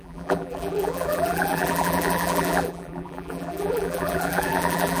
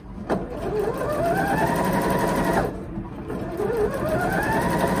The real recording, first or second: second